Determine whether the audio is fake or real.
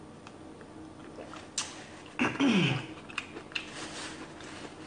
real